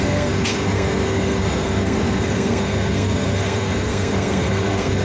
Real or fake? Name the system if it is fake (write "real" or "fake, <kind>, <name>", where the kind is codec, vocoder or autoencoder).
fake, codec, SNAC